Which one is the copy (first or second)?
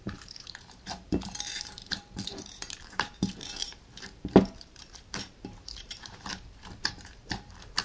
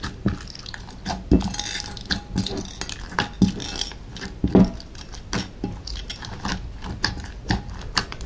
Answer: first